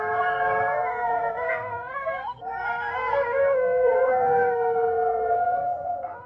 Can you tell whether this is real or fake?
fake